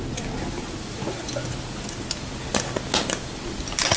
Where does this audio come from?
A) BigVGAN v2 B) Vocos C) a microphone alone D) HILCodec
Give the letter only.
C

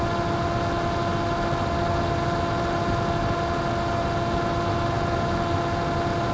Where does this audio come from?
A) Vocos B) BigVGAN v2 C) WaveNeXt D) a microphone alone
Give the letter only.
D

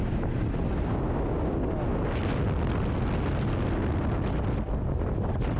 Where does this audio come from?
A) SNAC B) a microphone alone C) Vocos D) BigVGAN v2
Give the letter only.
B